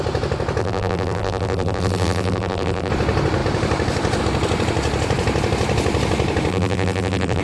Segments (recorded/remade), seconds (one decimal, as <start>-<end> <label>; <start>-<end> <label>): 0.0-0.6 recorded; 0.6-2.9 remade; 2.9-6.5 recorded; 6.5-7.4 remade